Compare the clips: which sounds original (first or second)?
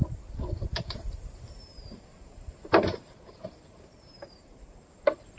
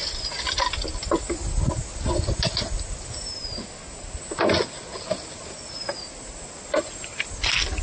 second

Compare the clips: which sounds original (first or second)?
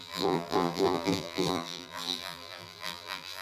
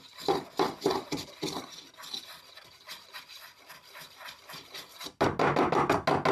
second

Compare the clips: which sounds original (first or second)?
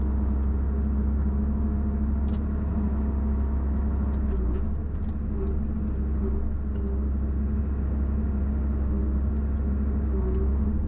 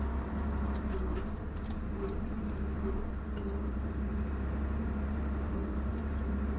first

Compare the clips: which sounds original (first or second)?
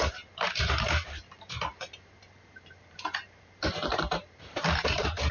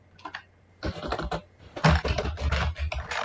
second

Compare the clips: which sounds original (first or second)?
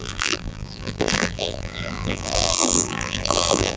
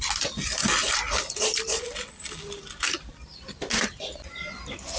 second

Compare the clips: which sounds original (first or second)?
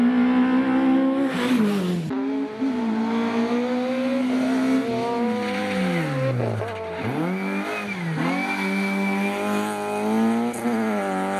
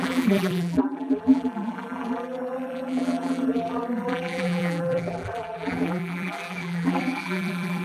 first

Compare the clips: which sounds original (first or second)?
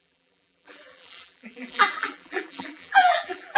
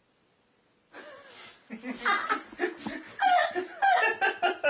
second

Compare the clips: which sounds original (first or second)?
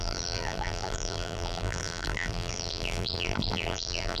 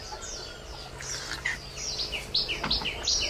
second